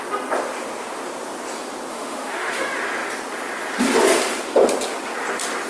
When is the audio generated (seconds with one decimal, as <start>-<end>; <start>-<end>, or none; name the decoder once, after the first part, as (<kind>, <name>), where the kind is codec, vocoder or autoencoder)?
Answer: 1.9-2.6 (autoencoder, DAC-VAE)